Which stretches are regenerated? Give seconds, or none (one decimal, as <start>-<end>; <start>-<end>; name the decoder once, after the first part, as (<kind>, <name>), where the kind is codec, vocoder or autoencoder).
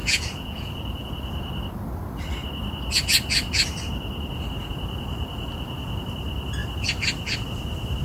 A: 0.0-1.1 (vocoder, Vocos)